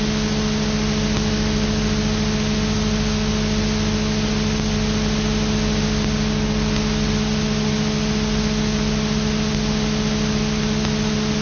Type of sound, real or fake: real